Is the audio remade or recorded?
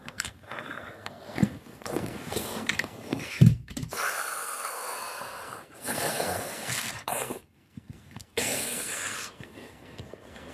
remade